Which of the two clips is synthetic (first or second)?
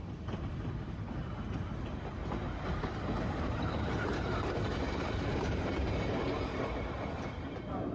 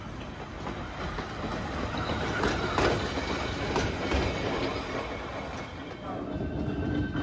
first